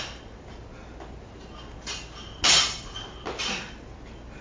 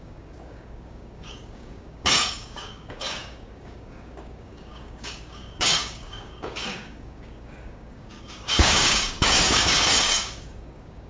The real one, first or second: first